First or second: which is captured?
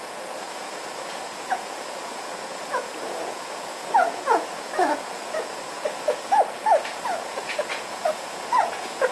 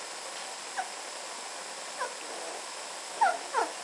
second